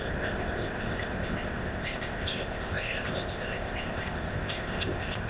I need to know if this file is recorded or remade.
remade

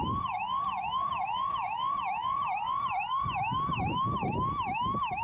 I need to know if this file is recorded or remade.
recorded